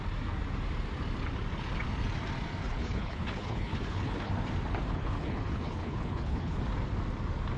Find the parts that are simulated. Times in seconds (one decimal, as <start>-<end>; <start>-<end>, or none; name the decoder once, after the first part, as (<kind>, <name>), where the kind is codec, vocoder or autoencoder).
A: 2.6-4.3 (codec, HILCodec); 4.9-6.6